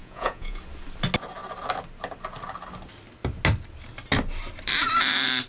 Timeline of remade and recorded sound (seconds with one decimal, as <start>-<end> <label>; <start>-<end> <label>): 0.0-0.6 remade; 0.6-5.5 recorded